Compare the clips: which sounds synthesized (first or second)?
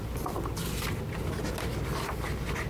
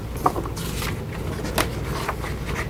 first